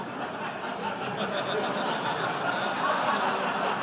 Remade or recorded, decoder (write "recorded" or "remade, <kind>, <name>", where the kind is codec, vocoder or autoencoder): recorded